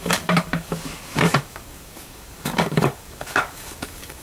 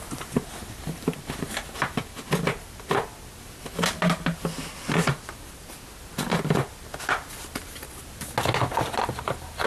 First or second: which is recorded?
second